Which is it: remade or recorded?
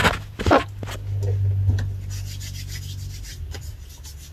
recorded